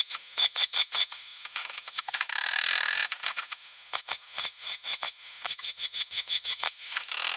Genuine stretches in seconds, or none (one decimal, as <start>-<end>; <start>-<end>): none